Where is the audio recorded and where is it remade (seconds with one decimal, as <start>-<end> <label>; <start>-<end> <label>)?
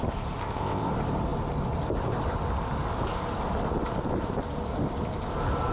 0.0-0.4 recorded; 0.4-0.9 remade; 0.9-5.7 recorded